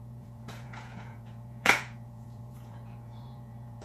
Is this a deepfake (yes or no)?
yes